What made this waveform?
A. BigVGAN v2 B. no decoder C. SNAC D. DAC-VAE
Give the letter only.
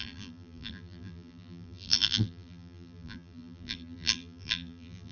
A